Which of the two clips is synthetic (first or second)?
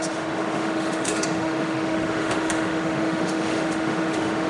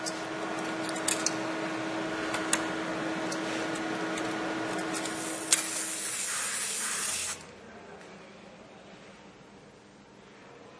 first